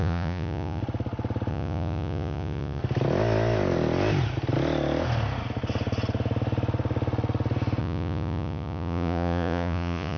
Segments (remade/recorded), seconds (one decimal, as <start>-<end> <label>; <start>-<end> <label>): 0.0-0.8 remade; 0.8-1.5 recorded; 1.5-2.8 remade; 2.8-7.8 recorded; 7.8-10.2 remade